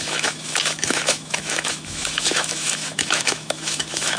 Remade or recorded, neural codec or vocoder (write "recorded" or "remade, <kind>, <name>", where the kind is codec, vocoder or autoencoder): remade, autoencoder, DAC-VAE